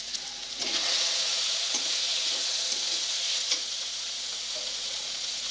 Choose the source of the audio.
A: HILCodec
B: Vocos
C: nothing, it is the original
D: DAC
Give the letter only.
B